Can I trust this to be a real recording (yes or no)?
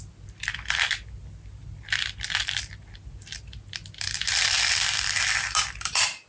yes